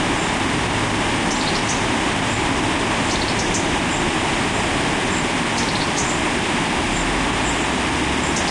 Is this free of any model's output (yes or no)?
yes